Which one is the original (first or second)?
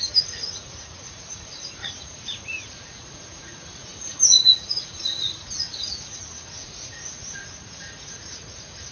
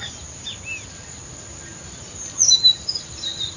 second